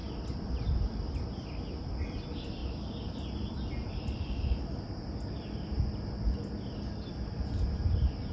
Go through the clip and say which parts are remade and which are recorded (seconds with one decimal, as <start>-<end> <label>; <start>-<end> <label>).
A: 0.0-8.3 recorded